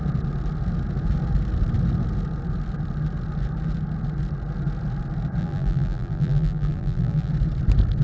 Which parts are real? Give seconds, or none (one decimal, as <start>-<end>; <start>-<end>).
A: 0.0-5.4; 7.3-8.0